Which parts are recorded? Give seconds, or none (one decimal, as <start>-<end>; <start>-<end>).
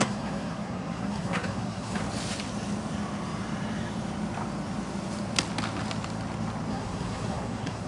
2.0-6.7